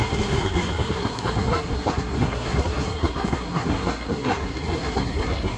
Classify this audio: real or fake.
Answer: fake